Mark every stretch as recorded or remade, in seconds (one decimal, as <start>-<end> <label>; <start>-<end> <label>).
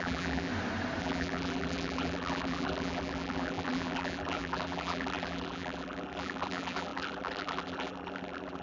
0.0-0.5 remade; 0.5-1.0 recorded; 1.0-8.6 remade